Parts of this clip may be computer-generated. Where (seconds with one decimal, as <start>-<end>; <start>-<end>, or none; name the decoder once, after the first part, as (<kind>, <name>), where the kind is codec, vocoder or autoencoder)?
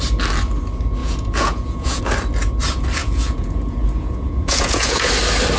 1.0-2.0 (vocoder, Vocos); 3.0-5.1